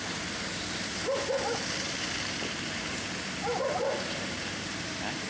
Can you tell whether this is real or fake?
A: fake